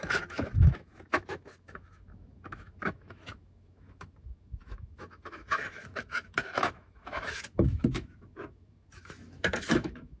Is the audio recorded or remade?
remade